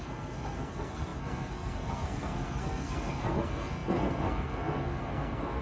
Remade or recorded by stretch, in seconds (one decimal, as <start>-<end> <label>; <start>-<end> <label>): 0.0-5.6 remade